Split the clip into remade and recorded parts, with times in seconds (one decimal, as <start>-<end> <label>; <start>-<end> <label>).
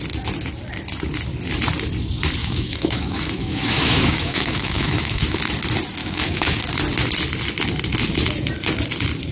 0.0-2.4 recorded; 2.4-5.4 remade; 5.4-6.0 recorded; 6.0-6.6 remade; 6.6-9.3 recorded